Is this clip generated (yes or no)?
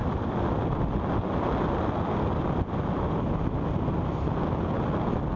no